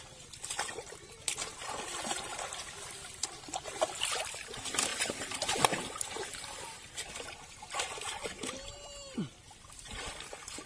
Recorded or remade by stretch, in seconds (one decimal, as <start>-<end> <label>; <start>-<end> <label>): 0.0-4.9 recorded; 4.9-7.1 remade; 7.1-10.7 recorded